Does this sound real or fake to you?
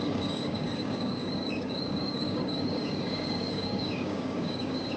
fake